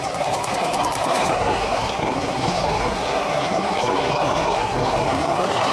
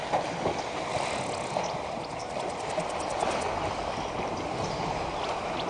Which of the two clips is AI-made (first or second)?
first